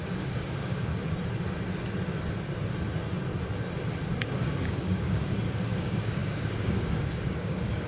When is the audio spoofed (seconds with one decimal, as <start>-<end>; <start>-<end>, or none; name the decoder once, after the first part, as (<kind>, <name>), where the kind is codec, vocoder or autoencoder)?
0.0-0.9 (codec, DAC); 4.2-7.9